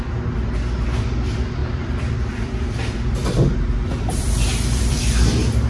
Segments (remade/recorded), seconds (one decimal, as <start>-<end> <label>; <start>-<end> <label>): 0.0-1.6 recorded; 1.6-5.0 remade; 5.0-5.7 recorded